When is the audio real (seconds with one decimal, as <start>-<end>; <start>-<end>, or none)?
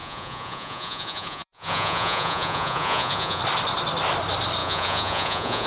3.4-4.6